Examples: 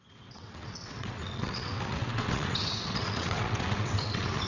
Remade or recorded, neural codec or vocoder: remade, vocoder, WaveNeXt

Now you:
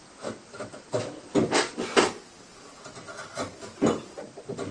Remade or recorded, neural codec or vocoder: recorded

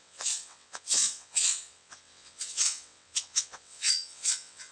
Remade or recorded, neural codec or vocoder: remade, vocoder, WaveNeXt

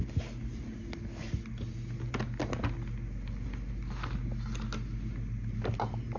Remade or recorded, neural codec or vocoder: recorded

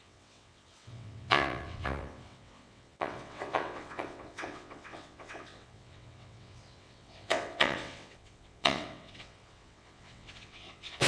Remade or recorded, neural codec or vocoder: remade, vocoder, WaveNeXt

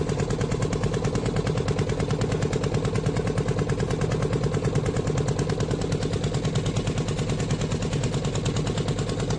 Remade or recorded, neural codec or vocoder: recorded